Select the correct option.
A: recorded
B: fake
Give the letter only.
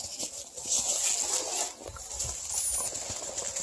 A